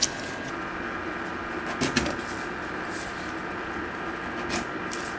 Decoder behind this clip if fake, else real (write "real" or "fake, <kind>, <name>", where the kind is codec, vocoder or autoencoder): real